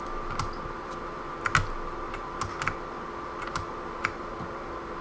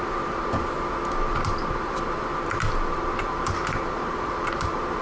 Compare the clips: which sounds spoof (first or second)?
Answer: second